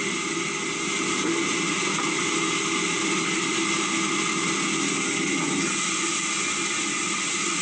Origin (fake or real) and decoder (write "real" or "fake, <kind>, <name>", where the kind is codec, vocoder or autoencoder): real